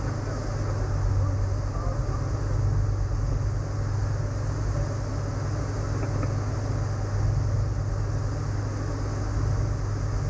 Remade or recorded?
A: recorded